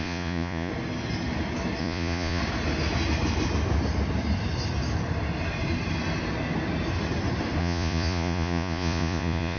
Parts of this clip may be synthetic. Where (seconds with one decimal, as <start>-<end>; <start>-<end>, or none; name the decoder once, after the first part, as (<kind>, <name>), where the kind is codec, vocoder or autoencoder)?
0.0-0.7 (vocoder, Vocos); 1.8-2.4; 7.6-9.6

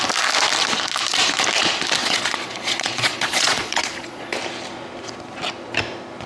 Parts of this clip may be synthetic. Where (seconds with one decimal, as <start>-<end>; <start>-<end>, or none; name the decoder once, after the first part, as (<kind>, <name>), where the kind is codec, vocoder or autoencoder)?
2.0-4.4 (vocoder, Vocos)

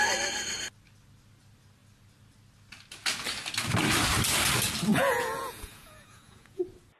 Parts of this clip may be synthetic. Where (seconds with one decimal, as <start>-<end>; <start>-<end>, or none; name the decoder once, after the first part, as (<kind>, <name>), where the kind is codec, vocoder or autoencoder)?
4.9-6.6 (vocoder, Vocos)

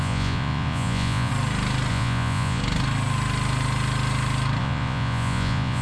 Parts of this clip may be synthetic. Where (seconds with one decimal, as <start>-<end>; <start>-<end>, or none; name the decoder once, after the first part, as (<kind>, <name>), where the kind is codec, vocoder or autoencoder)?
0.0-1.3 (vocoder, Vocos); 1.9-2.6; 4.6-5.8

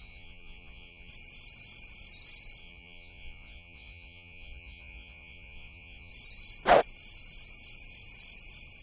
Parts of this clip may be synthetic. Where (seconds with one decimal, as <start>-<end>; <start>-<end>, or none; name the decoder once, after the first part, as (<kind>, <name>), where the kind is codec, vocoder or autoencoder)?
0.0-1.1 (vocoder, Vocos); 2.6-6.1